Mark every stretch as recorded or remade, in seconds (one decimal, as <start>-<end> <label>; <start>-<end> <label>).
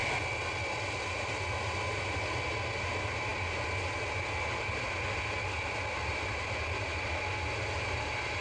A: 0.0-8.4 recorded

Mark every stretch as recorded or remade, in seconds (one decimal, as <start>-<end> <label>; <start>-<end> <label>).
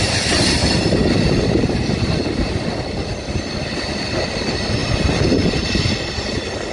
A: 0.0-2.2 remade; 2.2-3.6 recorded; 3.6-4.8 remade; 4.8-5.3 recorded; 5.3-6.7 remade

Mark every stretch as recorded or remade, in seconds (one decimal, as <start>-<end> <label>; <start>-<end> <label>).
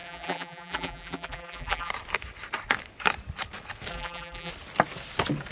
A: 0.0-1.9 remade; 1.9-3.9 recorded; 3.9-4.5 remade; 4.5-5.5 recorded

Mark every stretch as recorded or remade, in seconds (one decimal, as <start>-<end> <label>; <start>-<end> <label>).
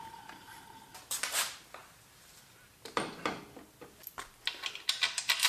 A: 0.0-5.5 recorded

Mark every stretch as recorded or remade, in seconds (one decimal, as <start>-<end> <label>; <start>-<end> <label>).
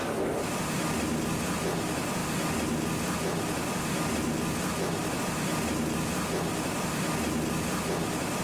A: 0.0-8.4 recorded